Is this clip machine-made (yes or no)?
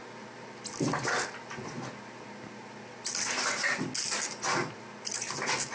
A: no